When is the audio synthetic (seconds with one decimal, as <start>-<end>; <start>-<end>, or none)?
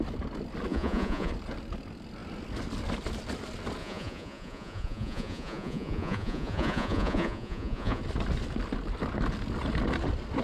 0.7-1.3; 3.8-8.0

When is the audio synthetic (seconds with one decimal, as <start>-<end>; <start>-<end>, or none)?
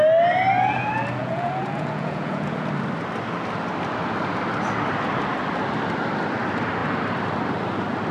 1.2-2.7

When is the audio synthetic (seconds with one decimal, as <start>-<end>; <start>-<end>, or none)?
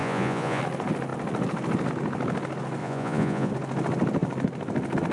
0.0-0.6; 2.8-3.5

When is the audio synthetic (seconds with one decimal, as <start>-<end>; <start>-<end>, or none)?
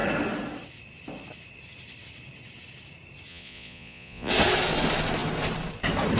3.3-4.3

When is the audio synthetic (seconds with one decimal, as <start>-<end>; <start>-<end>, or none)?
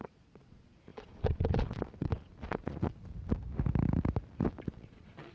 0.0-3.1; 4.7-5.3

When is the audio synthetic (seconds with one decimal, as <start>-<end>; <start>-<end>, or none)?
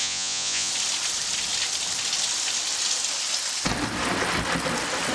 0.0-0.7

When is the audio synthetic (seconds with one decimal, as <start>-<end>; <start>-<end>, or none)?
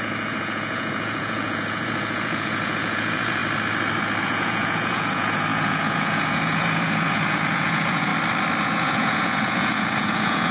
0.0-3.4; 4.2-8.1; 8.6-10.5